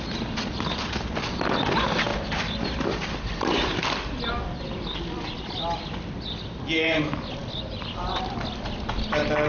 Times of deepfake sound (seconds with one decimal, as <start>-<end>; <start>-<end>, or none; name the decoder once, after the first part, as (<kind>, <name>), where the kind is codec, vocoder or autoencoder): 2.1-5.2 (vocoder, BigVGAN v2); 7.4-8.3